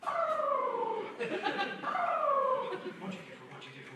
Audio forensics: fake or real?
fake